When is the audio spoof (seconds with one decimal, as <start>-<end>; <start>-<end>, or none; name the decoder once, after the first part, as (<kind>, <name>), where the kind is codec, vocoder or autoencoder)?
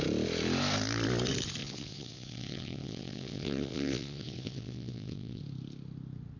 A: 1.6-5.4 (vocoder, WaveNeXt)